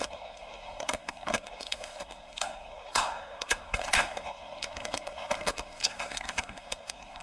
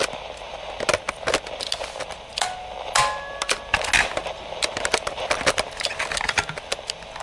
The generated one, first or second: first